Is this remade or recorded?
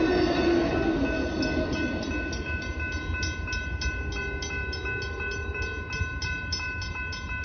recorded